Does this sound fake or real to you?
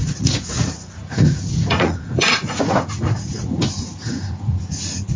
fake